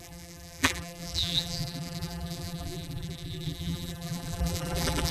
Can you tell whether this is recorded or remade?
remade